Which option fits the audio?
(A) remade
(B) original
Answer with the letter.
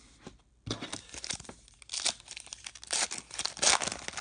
B